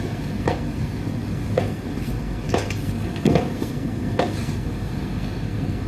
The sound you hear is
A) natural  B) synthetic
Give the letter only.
B